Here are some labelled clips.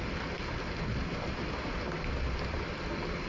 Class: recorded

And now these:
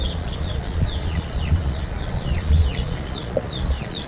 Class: remade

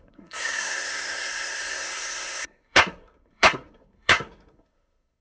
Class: remade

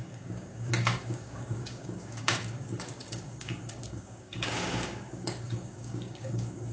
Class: remade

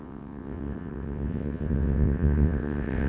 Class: remade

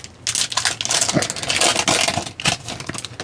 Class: recorded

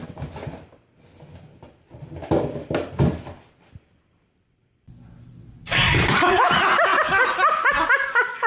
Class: recorded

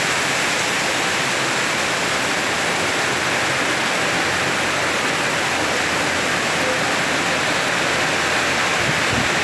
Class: recorded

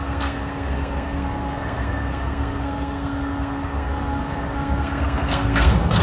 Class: remade